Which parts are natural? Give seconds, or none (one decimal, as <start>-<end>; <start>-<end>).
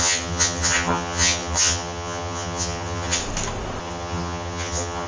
3.2-3.8